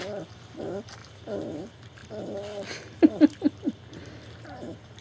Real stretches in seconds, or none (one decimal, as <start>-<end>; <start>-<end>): 0.0-5.0